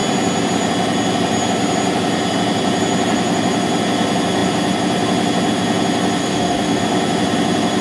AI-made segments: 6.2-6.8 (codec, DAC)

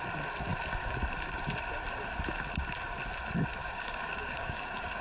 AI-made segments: 3.6-5.0 (codec, DAC)

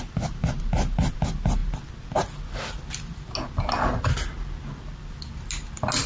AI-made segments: none

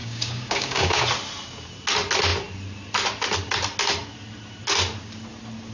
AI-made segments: 0.0-1.0 (codec, DAC)